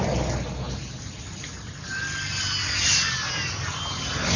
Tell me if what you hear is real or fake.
real